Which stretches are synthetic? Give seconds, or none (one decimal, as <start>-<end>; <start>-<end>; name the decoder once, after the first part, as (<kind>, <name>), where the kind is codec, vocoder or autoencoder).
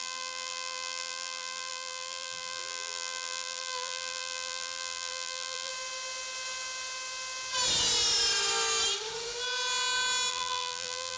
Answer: 0.0-5.7 (vocoder, BigVGAN v2); 10.3-11.2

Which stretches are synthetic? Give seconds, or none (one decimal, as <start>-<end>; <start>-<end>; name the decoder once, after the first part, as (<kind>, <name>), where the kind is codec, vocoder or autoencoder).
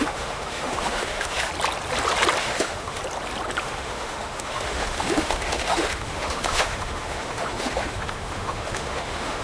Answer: 0.0-1.5 (autoencoder, DAC-VAE); 2.4-3.0; 3.6-9.4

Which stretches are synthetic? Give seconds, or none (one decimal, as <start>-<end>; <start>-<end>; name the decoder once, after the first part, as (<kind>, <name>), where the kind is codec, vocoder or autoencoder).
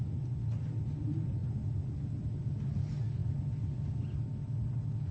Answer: none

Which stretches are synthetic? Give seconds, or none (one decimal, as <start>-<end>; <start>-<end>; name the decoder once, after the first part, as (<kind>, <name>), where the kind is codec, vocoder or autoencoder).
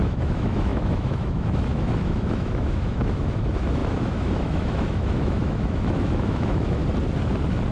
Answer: 0.0-6.8 (autoencoder, DAC-VAE)